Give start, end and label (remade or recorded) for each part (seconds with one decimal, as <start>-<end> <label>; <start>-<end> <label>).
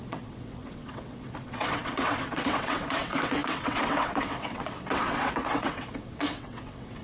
0.0-7.0 remade